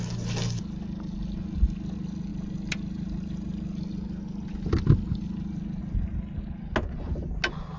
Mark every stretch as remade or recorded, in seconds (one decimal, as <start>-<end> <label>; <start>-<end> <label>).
0.0-7.8 recorded